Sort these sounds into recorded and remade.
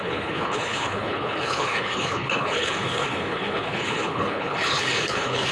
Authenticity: remade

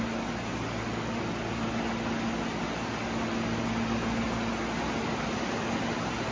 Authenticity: recorded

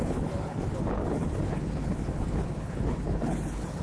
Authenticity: remade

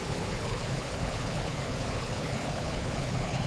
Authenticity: remade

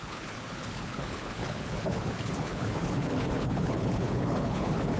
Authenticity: remade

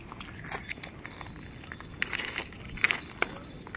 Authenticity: recorded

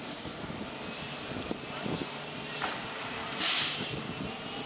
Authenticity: recorded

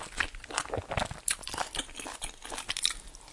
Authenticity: recorded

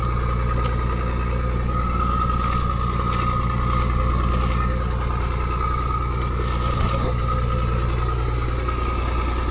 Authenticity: recorded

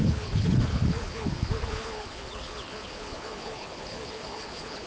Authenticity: remade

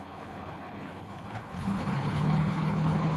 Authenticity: remade